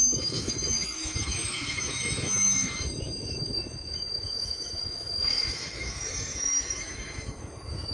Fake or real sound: fake